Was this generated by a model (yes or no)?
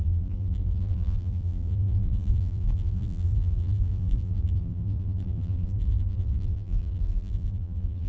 yes